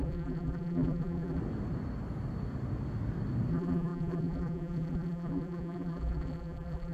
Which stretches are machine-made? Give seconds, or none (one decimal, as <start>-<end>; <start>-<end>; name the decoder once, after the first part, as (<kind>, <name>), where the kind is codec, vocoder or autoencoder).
0.0-1.4 (vocoder, BigVGAN v2); 3.5-6.9